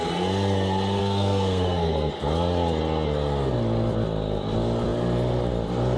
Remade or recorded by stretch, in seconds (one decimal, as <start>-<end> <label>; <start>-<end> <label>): 0.0-1.0 recorded; 1.0-2.1 remade; 2.1-6.0 recorded